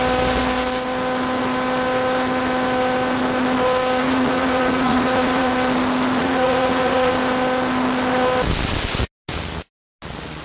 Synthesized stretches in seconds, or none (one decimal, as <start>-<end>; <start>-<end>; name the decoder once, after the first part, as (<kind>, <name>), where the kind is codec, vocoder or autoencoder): 4.0-5.5 (vocoder, Vocos); 6.2-7.1